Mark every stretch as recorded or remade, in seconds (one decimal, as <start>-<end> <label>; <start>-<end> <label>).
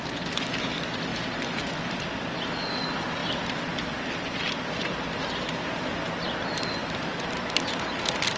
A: 0.0-3.2 recorded; 3.2-4.1 remade; 4.1-6.8 recorded; 6.8-7.4 remade; 7.4-8.4 recorded